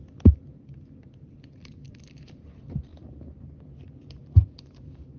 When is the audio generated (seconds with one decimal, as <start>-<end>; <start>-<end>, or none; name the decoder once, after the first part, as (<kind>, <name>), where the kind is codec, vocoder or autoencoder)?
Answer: 1.6-2.5 (vocoder, BigVGAN v2); 2.9-3.6; 4.2-5.2